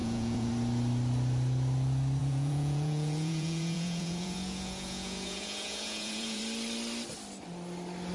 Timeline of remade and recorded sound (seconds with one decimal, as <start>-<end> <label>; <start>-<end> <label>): 0.0-0.5 remade; 0.5-2.2 recorded; 2.2-6.4 remade; 6.4-8.1 recorded